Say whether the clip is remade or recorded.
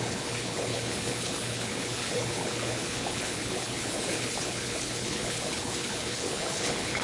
remade